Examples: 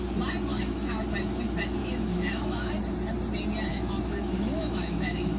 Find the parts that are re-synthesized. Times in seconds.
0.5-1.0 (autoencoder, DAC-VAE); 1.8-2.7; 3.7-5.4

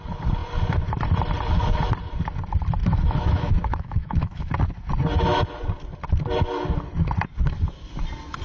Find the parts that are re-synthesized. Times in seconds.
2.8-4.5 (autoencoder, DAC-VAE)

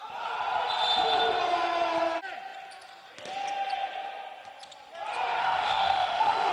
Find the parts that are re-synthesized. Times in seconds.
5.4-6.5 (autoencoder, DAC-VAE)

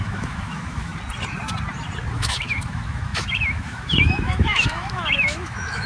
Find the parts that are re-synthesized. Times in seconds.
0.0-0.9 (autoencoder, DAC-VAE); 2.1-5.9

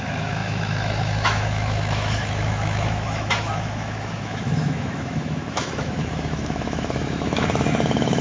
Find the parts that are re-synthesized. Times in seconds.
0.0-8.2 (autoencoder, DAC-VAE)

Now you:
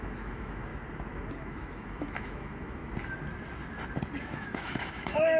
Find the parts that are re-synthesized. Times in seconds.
0.0-0.7 (autoencoder, DAC-VAE); 1.4-2.8; 4.2-5.4